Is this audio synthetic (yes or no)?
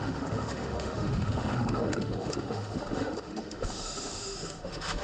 yes